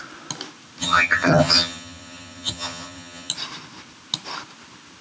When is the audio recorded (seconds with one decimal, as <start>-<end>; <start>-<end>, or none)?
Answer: 0.0-0.8; 3.3-5.0